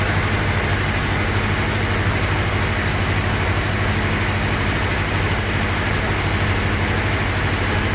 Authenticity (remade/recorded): recorded